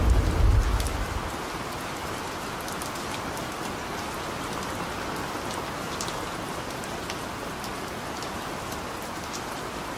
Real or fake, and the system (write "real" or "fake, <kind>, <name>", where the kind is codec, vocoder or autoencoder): real